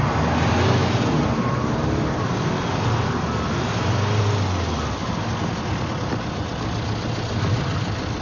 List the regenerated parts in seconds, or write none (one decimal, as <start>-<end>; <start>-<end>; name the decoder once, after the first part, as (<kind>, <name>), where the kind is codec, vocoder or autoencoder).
none